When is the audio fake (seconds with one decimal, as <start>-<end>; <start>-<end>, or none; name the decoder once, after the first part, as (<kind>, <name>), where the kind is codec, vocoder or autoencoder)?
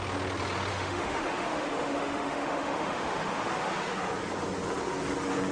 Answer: 0.7-4.0 (autoencoder, DAC-VAE)